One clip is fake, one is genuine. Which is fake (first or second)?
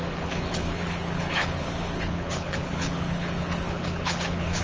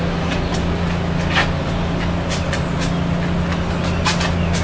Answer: first